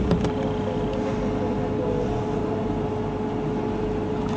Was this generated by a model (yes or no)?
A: no